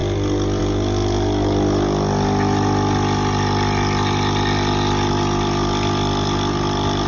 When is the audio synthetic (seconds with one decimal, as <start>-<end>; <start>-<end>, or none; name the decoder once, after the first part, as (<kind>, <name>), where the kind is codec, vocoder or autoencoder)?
none

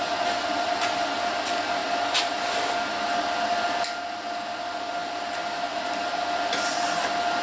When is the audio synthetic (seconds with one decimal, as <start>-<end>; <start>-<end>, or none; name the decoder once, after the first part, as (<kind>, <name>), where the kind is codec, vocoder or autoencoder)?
none

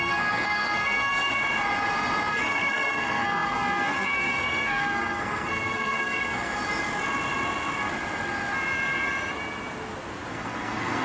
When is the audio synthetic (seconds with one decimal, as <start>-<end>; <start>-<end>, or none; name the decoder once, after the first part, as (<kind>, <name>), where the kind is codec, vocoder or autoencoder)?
0.0-1.4 (codec, SNAC); 2.3-6.6; 10.3-11.0